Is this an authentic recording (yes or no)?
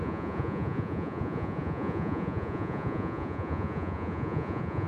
no